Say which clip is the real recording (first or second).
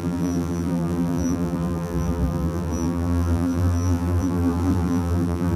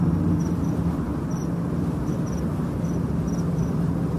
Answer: second